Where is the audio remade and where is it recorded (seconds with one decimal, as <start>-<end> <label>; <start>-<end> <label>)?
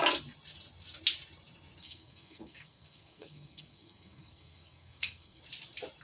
0.0-1.8 recorded; 1.8-5.4 remade; 5.4-6.0 recorded